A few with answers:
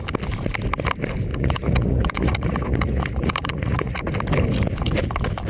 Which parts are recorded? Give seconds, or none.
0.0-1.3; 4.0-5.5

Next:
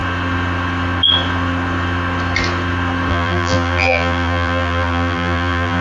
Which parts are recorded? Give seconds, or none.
0.0-3.1

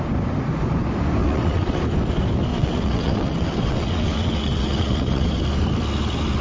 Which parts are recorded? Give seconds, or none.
0.0-1.2; 1.8-2.5; 5.4-6.4

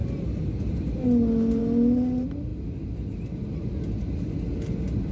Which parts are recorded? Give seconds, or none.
0.0-5.1

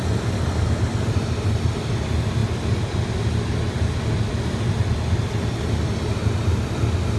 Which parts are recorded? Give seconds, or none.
0.0-7.2